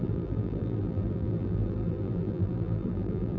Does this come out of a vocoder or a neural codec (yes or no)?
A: yes